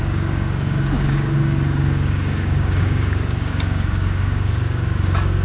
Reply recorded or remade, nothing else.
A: remade